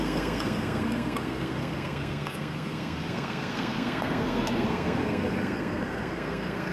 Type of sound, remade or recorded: remade